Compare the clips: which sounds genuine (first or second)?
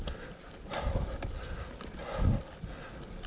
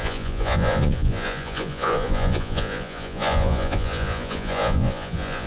first